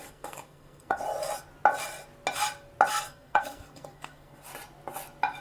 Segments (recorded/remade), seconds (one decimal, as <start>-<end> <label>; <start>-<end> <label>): 0.0-1.0 remade; 1.0-2.9 recorded; 2.9-4.5 remade; 4.5-5.4 recorded